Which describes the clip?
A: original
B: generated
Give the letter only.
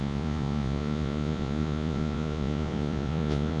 B